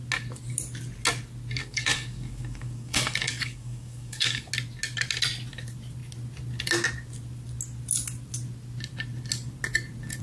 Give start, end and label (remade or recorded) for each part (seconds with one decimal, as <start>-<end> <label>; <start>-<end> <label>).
0.0-1.6 recorded; 1.6-4.5 remade; 4.5-10.2 recorded